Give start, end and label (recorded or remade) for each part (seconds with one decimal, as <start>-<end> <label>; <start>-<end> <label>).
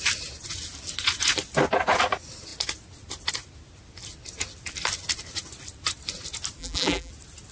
0.0-6.6 recorded; 6.6-7.1 remade; 7.1-7.5 recorded